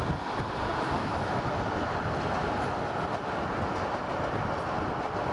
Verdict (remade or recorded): recorded